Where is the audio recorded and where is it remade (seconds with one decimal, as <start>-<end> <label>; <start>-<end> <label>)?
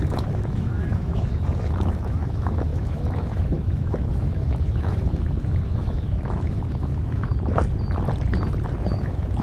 0.0-7.3 remade; 7.3-8.9 recorded; 8.9-9.4 remade